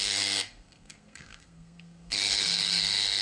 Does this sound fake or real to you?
fake